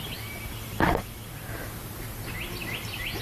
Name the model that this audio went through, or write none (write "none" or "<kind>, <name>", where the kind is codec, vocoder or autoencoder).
none